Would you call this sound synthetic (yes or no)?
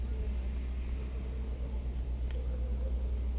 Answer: no